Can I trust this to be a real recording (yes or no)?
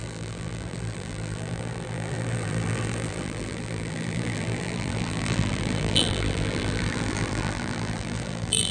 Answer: no